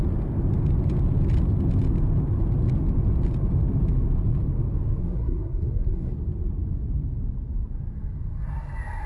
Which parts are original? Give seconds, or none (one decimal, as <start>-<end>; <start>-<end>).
0.0-5.0; 6.1-9.1